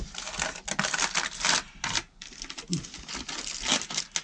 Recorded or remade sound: recorded